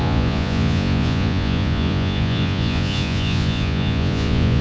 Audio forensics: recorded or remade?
remade